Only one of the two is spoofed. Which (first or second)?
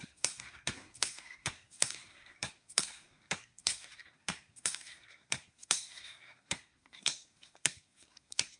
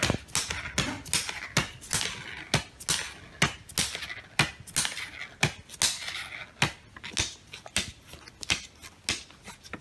first